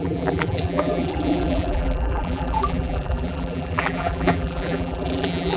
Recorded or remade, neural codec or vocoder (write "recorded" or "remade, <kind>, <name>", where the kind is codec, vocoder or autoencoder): remade, vocoder, BigVGAN v2